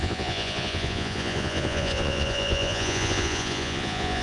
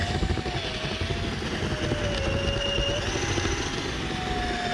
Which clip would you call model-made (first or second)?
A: first